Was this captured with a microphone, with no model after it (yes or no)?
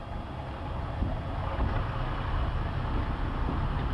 yes